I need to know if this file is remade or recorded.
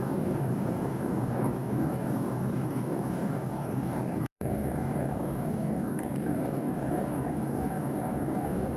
remade